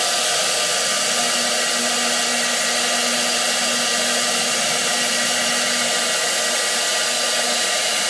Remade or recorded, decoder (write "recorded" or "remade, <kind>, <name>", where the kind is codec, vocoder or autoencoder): recorded